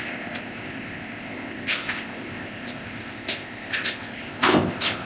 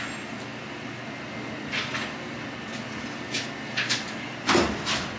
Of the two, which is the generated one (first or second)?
first